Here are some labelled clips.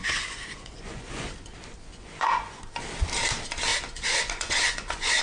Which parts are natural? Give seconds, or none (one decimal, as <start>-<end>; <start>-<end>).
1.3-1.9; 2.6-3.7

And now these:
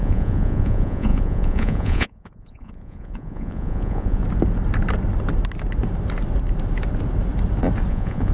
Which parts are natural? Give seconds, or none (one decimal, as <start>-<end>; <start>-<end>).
4.2-7.9

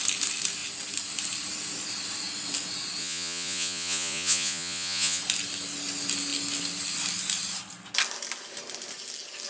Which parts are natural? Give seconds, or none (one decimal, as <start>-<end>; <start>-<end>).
0.0-3.0; 5.2-9.5

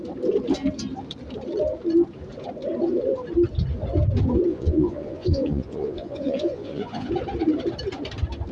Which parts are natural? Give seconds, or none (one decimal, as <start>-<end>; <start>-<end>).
0.0-4.5; 7.1-8.5